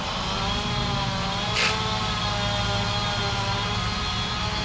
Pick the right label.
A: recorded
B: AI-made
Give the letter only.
A